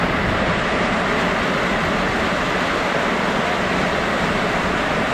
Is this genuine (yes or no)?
yes